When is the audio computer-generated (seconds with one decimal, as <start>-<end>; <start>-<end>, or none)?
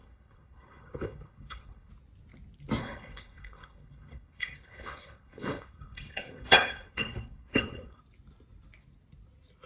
0.0-1.9; 2.8-8.0